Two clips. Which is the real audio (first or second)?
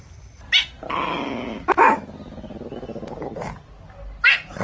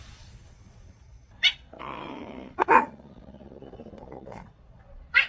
first